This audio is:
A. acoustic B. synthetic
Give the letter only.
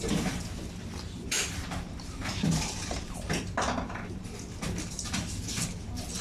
B